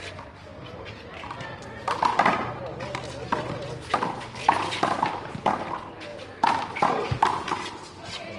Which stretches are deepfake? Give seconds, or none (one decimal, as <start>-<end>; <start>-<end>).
3.3-3.9; 6.1-6.8